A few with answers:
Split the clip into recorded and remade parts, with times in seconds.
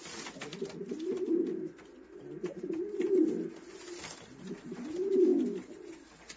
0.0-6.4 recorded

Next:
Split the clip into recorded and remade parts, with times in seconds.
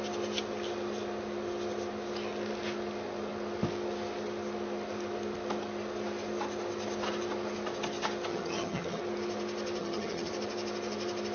0.0-8.3 recorded; 8.3-9.0 remade; 9.0-9.8 recorded; 9.8-10.3 remade; 10.3-11.3 recorded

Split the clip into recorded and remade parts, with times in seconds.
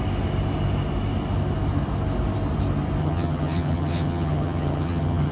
0.0-3.0 recorded; 3.0-5.3 remade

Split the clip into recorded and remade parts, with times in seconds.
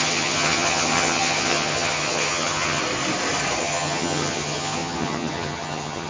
0.0-2.8 remade; 2.8-3.6 recorded; 3.6-6.1 remade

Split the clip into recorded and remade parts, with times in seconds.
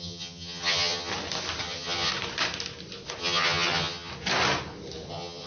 0.0-1.1 remade; 1.1-1.6 recorded; 1.6-2.1 remade; 2.1-3.2 recorded; 3.2-4.1 remade; 4.1-5.1 recorded; 5.1-5.5 remade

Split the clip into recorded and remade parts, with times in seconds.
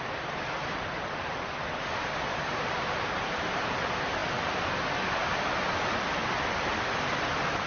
0.0-7.7 recorded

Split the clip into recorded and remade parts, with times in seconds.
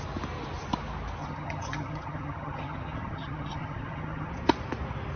0.0-1.2 recorded; 1.2-4.3 remade; 4.3-5.2 recorded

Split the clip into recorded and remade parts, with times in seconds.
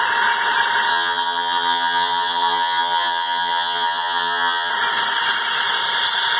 0.0-0.9 recorded; 0.9-4.7 remade; 4.7-6.4 recorded